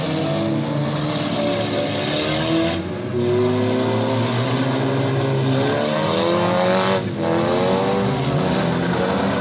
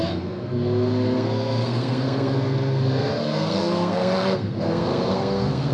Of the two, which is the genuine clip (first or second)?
first